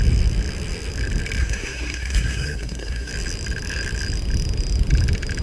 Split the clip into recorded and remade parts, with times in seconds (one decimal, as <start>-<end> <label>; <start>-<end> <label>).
0.0-1.4 recorded; 1.4-3.1 remade; 3.1-5.4 recorded